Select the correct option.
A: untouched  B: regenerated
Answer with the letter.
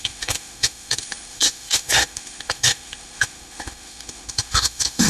B